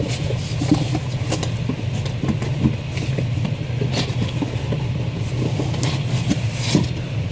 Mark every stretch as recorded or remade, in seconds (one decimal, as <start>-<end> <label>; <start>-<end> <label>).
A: 0.0-7.3 recorded